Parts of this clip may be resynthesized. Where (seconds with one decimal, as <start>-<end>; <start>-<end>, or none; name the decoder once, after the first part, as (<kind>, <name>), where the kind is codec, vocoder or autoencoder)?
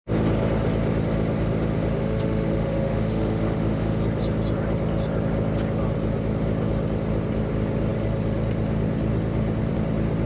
2.0-4.0 (autoencoder, DAC-VAE)